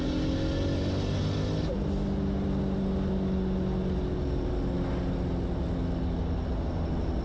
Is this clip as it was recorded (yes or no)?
yes